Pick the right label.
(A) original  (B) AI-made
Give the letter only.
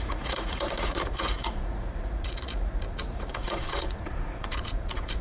B